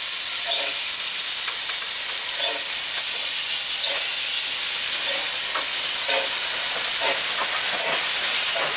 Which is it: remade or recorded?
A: recorded